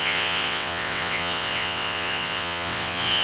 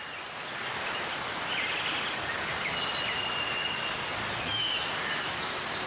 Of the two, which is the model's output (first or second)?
first